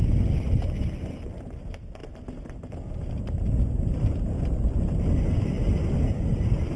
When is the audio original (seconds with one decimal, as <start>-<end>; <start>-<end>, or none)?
0.0-6.8